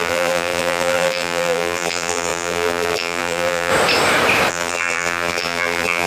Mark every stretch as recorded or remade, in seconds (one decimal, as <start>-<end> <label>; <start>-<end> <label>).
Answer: 0.0-3.7 remade; 3.7-4.5 recorded; 4.5-6.1 remade